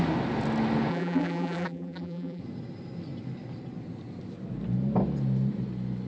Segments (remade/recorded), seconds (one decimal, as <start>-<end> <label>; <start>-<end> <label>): 0.0-0.9 recorded; 0.9-2.4 remade; 2.4-6.1 recorded